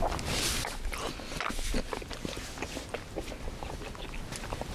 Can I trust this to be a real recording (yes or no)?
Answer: yes